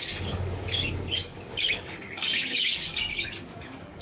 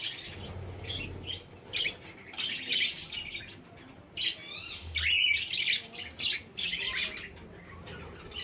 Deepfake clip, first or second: first